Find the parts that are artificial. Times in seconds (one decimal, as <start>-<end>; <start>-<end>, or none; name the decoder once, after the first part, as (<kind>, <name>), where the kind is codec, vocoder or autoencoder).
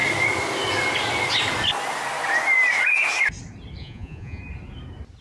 3.8-4.4 (vocoder, Vocos)